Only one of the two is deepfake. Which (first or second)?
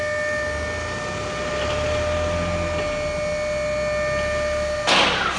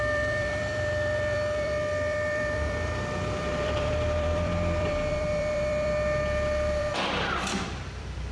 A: second